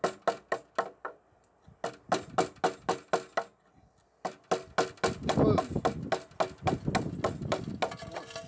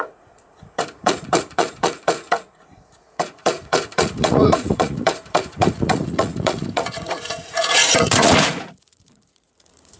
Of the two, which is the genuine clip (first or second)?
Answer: first